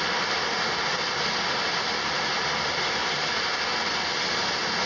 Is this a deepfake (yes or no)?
no